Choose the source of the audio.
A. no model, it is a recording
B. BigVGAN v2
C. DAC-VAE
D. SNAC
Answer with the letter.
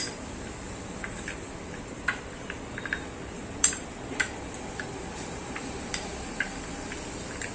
B